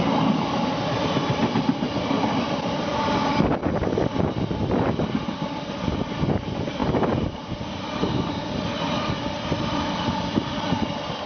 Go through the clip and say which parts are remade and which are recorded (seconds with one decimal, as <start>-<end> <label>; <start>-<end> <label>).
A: 0.0-11.3 recorded

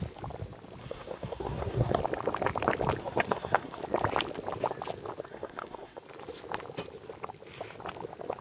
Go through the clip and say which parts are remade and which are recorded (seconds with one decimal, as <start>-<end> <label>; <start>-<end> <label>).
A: 0.0-0.8 recorded; 0.8-2.0 remade; 2.0-3.0 recorded; 3.0-3.8 remade; 3.8-5.3 recorded; 5.3-6.0 remade; 6.0-8.4 recorded

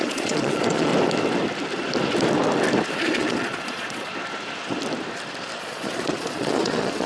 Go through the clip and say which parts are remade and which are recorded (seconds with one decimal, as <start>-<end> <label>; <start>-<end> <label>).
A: 0.0-0.9 remade; 0.9-2.9 recorded; 2.9-4.1 remade; 4.1-5.6 recorded; 5.6-7.1 remade

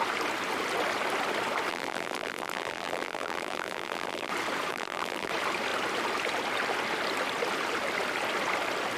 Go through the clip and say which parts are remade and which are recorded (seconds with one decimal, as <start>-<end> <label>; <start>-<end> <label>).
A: 0.0-1.7 recorded; 1.7-4.3 remade; 4.3-4.7 recorded; 4.7-5.3 remade; 5.3-9.0 recorded

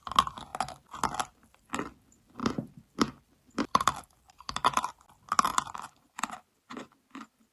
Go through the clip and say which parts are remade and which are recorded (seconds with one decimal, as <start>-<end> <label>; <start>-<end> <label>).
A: 0.0-2.4 recorded; 2.4-4.9 remade; 4.9-5.5 recorded; 5.5-6.1 remade; 6.1-7.5 recorded

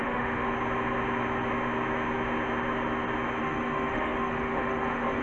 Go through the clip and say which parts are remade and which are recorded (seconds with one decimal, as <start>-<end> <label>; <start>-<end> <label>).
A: 0.0-0.5 remade; 0.5-3.4 recorded; 3.4-5.2 remade

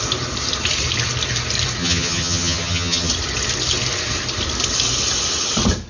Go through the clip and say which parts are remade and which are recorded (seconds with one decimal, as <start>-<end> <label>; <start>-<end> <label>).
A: 0.0-1.8 recorded; 1.8-3.1 remade; 3.1-5.9 recorded